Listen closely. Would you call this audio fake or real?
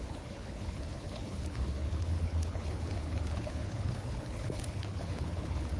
fake